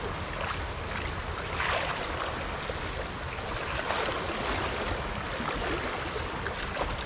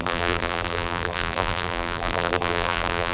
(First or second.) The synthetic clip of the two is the second